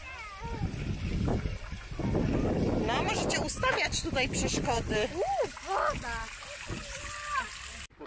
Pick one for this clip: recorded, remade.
recorded